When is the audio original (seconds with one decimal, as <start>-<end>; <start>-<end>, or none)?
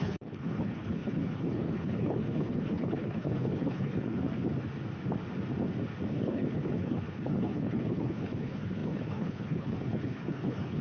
4.2-6.1